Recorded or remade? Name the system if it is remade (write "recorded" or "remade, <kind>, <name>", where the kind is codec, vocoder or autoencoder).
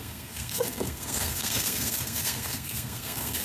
remade, codec, SNAC